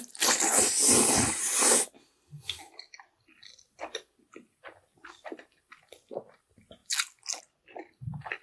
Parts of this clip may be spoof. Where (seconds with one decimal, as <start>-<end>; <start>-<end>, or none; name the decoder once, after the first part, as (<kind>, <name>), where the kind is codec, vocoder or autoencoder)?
none

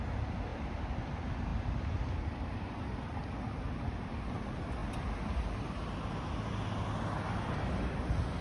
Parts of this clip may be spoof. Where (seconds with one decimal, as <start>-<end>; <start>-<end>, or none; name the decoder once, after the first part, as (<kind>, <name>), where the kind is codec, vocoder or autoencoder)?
none

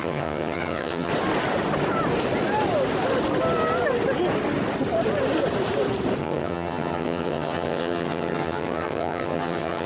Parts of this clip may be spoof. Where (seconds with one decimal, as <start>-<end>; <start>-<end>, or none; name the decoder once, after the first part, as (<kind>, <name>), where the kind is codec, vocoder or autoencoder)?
0.0-1.1 (vocoder, HiFi-GAN); 6.2-9.9

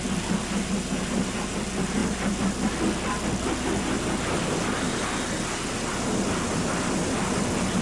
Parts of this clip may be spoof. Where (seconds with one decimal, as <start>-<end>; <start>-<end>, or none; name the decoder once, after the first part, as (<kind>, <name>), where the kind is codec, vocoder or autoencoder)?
none

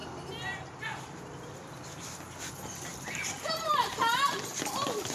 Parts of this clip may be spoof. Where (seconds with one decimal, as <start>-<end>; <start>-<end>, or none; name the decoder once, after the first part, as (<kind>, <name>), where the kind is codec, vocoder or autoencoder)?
2.9-4.4 (vocoder, BigVGAN v2)

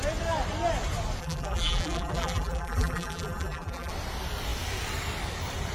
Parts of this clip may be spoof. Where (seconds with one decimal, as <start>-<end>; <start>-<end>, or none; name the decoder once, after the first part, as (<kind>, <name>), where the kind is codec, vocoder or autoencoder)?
1.2-3.9 (vocoder, BigVGAN v2)